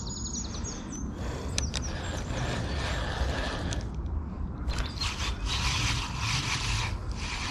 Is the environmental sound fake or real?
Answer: real